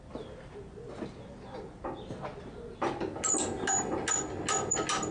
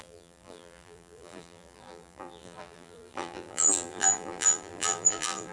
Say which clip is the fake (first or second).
second